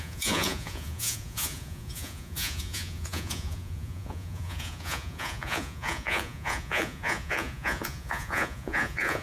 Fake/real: fake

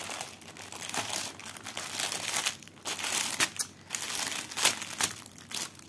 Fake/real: real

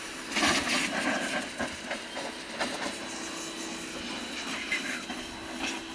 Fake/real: real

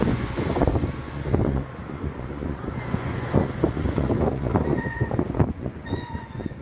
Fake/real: fake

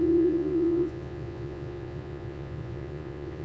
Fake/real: fake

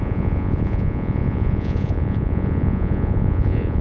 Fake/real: fake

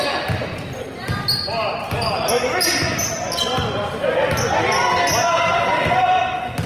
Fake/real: real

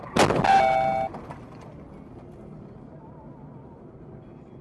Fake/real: real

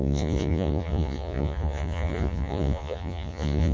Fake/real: fake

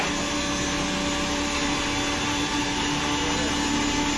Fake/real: real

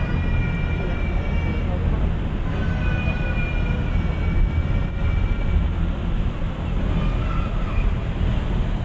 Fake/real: real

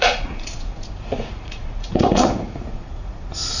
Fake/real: fake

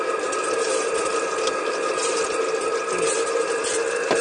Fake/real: real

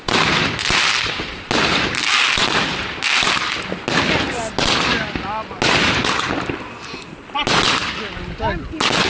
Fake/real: real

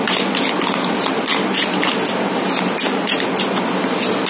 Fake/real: real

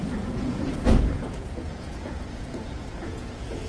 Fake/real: fake